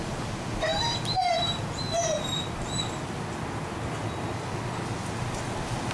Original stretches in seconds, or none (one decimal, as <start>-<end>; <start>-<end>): 0.0-5.9